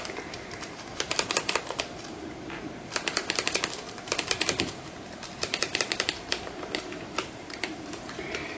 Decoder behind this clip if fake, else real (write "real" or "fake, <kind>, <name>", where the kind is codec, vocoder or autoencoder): fake, vocoder, BigVGAN v2